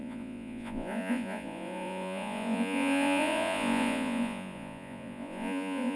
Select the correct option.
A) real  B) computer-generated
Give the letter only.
B